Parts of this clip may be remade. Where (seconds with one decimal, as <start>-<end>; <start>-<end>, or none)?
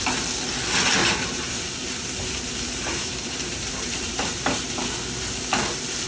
1.0-4.7